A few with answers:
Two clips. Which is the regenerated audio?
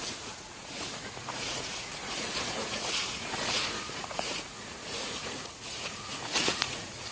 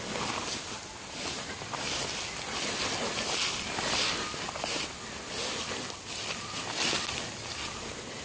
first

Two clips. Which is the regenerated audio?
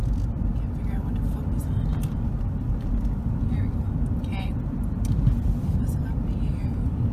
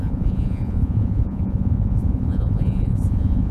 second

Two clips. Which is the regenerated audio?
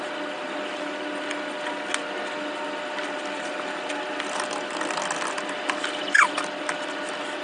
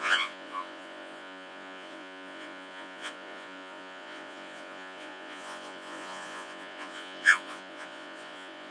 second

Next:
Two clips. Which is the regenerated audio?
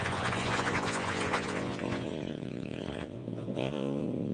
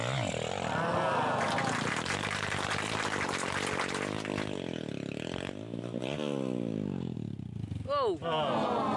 first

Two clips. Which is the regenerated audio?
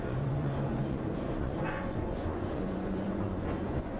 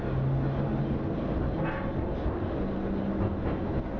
first